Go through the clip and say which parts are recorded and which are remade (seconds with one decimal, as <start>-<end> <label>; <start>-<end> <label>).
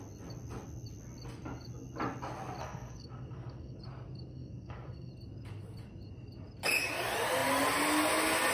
0.0-2.6 recorded; 2.6-3.8 remade; 3.8-4.3 recorded; 4.3-5.1 remade; 5.1-8.5 recorded